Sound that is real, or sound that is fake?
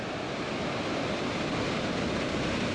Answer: real